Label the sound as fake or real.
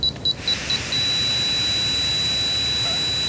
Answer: real